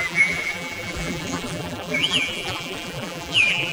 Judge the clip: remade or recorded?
remade